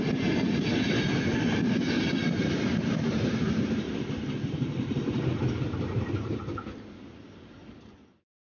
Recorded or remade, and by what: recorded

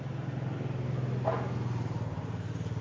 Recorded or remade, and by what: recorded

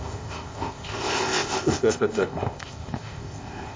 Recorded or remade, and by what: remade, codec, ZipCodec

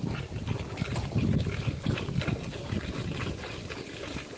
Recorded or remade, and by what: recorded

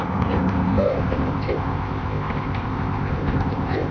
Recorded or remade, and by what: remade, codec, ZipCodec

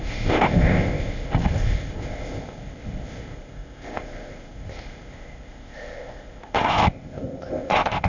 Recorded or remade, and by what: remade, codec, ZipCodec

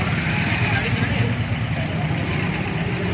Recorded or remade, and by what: recorded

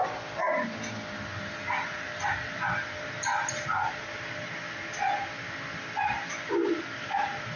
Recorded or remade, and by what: recorded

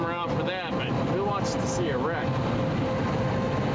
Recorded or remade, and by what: recorded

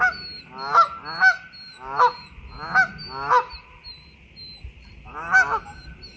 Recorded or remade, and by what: recorded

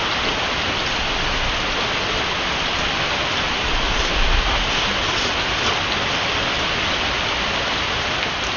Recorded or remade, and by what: recorded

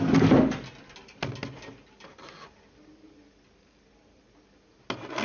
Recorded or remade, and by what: recorded